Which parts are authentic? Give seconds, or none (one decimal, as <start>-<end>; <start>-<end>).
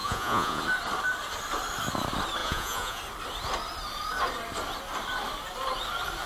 0.6-2.4; 3.0-6.3